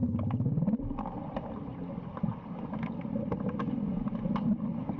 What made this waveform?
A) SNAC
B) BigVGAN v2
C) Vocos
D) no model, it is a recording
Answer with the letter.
D